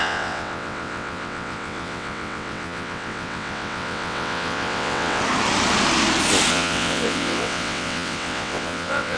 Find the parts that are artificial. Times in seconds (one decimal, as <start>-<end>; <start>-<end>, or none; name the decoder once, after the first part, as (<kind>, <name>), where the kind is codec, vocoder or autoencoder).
0.0-5.2 (vocoder, WaveNeXt); 6.5-9.2